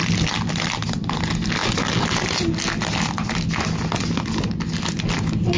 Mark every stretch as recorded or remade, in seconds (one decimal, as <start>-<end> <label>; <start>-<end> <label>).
0.0-5.6 recorded